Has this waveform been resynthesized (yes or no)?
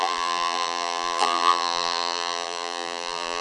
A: yes